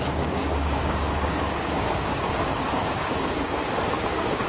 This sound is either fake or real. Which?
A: fake